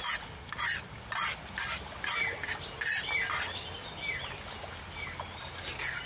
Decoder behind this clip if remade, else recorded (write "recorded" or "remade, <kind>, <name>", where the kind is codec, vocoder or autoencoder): recorded